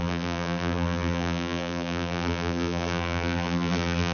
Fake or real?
fake